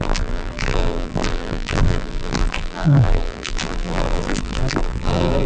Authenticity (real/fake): fake